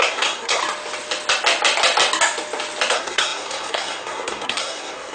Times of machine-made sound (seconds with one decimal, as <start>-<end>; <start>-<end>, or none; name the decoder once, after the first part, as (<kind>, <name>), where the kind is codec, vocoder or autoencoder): 0.0-0.6 (codec, SNAC); 2.9-5.1